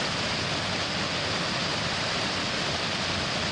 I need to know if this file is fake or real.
real